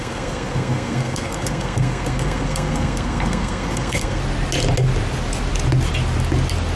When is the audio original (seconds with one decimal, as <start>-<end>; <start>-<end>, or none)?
4.2-6.8